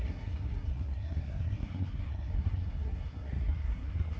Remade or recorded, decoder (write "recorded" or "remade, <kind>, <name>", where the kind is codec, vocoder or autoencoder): remade, codec, SNAC